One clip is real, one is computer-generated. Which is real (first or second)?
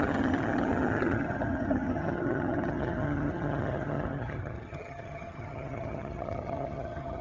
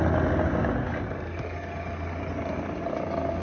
second